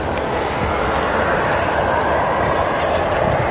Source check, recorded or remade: recorded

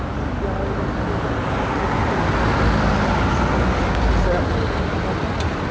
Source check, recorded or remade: recorded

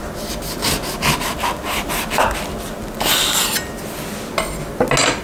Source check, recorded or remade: recorded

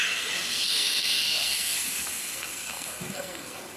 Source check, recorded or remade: remade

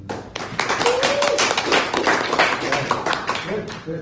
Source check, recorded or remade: recorded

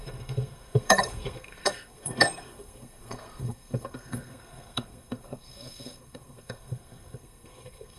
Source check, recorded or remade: remade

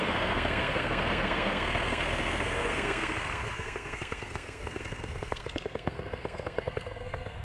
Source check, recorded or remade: remade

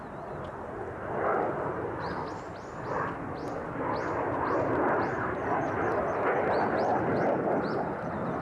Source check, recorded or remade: recorded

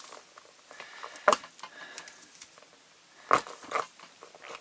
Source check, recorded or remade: recorded